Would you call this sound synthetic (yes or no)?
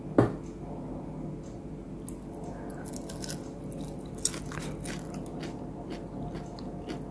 no